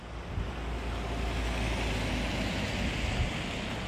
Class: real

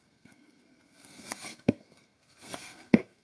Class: fake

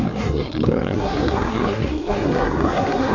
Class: fake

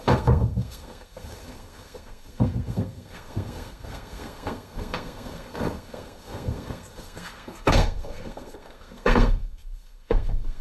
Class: fake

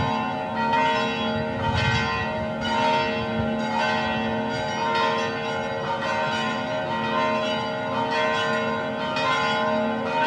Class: real